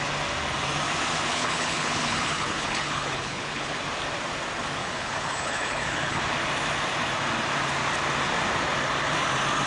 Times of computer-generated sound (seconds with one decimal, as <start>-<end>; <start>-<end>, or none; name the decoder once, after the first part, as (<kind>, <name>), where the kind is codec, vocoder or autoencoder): 1.3-3.8 (codec, HILCodec); 4.8-6.2